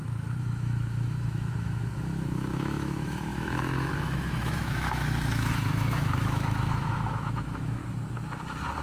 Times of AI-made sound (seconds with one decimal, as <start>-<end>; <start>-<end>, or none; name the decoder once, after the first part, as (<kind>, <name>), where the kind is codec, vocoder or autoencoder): 0.0-7.8 (autoencoder, DAC-VAE)